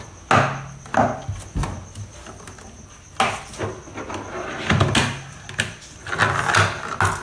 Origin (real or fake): real